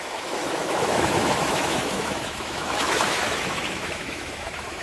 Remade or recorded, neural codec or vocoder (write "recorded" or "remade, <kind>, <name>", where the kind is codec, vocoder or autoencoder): remade, autoencoder, DAC-VAE